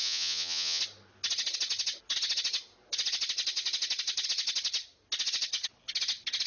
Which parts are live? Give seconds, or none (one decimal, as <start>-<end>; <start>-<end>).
0.8-6.5